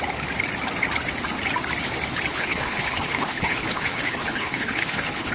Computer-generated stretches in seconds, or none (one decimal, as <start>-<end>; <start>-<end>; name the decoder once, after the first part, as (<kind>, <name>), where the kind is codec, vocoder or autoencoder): 2.3-5.3 (codec, HILCodec)